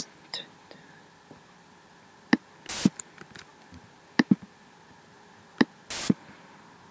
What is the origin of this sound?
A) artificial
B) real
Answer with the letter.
B